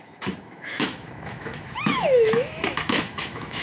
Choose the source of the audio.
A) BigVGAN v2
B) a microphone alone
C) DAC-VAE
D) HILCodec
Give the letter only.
C